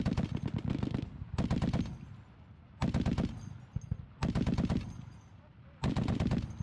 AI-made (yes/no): no